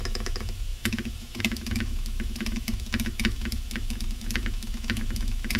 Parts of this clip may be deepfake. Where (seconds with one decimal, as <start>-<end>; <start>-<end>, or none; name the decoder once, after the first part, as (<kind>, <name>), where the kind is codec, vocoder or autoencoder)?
0.0-5.6 (autoencoder, DAC-VAE)

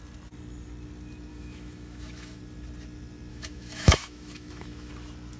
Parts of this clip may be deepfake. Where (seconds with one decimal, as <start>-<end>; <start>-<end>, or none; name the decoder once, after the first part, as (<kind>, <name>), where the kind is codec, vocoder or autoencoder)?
1.3-2.4 (autoencoder, DAC-VAE); 3.3-4.9

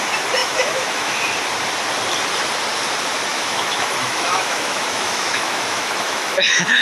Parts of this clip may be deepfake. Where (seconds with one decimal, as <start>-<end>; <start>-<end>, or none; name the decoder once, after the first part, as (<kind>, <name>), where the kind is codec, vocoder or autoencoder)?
0.4-1.2 (autoencoder, DAC-VAE); 3.3-6.8

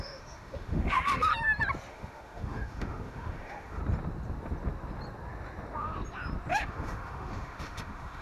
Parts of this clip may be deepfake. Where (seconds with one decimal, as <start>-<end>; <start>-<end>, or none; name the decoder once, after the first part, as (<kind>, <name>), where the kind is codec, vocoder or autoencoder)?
0.0-1.3 (autoencoder, DAC-VAE); 1.9-3.8; 6.5-8.2

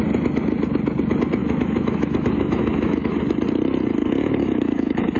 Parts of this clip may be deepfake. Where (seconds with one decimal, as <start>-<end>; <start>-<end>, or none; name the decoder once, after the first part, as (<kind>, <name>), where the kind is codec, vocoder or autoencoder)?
1.4-3.2 (autoencoder, DAC-VAE); 4.0-5.2

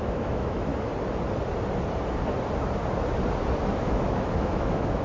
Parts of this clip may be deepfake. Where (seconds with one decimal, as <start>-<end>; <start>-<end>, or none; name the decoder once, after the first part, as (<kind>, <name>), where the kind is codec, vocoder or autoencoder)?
0.0-0.7 (autoencoder, DAC-VAE); 3.7-5.0